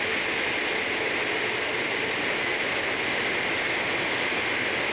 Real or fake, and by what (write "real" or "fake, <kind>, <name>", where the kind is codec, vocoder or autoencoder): real